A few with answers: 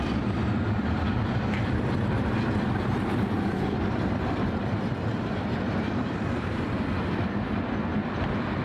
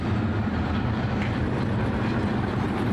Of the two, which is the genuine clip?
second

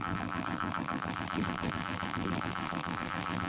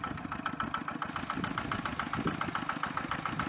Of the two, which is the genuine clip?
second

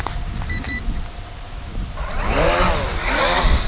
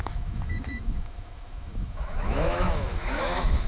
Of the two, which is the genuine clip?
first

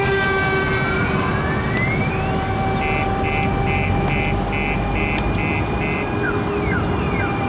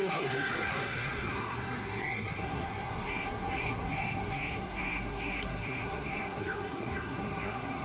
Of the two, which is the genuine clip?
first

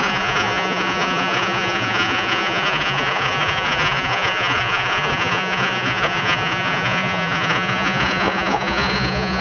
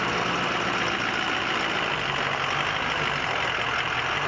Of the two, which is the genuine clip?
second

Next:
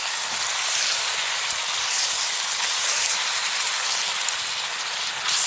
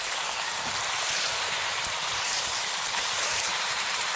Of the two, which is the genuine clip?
first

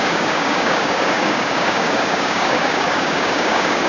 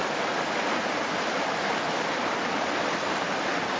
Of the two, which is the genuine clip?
second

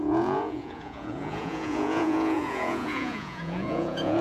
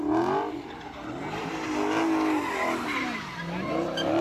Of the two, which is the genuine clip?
second